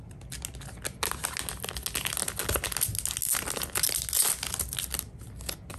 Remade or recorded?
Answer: recorded